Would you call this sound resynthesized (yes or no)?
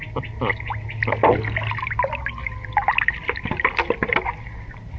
no